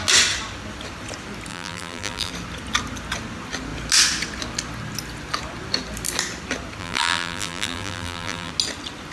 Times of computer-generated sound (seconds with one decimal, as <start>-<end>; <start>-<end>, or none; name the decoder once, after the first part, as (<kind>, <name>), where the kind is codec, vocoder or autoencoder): 1.5-2.3 (vocoder, BigVGAN v2); 6.8-8.5